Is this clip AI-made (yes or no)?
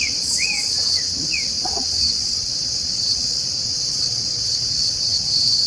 yes